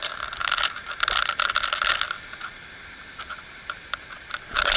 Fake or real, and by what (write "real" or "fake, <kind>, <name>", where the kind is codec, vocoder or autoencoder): real